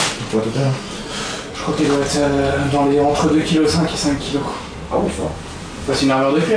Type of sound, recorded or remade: recorded